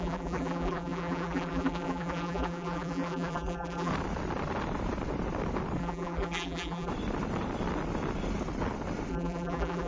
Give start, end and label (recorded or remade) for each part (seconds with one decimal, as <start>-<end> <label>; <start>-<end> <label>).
0.0-3.9 remade; 3.9-5.8 recorded; 5.8-6.9 remade; 6.9-9.1 recorded; 9.1-9.9 remade